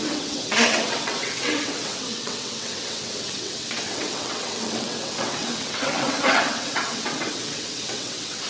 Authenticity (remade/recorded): remade